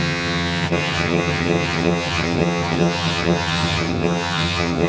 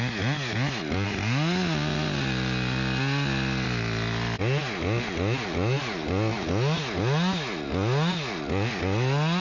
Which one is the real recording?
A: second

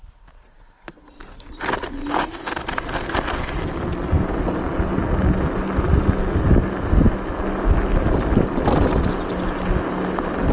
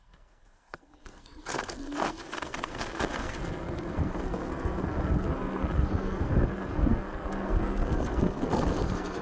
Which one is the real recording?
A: first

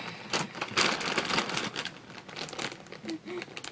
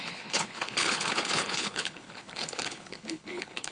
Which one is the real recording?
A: first